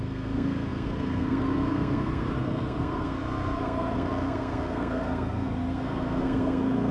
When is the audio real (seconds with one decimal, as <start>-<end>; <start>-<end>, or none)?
none